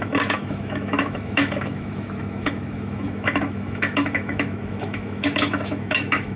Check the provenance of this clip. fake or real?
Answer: fake